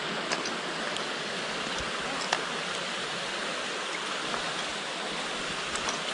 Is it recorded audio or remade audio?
recorded